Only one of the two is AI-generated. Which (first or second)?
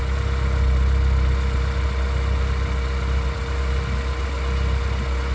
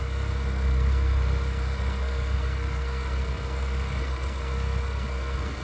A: second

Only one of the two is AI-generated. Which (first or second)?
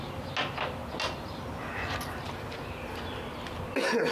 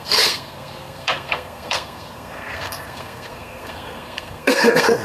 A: second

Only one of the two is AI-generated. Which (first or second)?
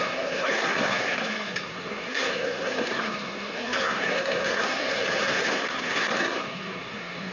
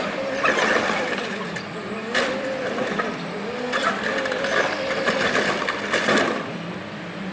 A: first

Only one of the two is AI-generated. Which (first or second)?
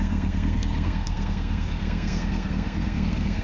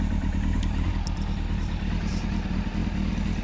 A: first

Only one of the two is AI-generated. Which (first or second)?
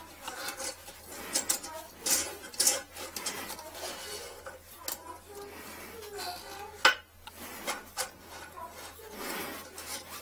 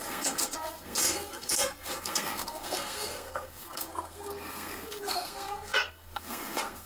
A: second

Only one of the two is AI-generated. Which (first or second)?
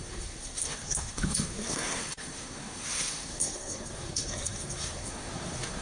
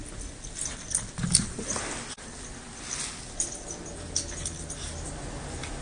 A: first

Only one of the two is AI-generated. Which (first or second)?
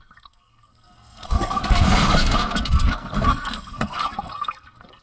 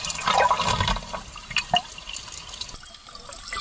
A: first